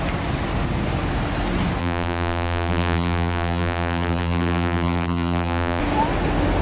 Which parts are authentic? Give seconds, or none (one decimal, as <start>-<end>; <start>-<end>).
0.0-1.8; 5.8-6.6